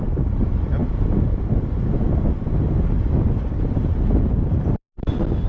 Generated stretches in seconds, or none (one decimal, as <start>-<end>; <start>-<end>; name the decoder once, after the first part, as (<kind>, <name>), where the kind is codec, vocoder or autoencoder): none